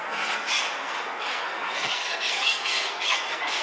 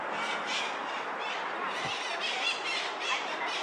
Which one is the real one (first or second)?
second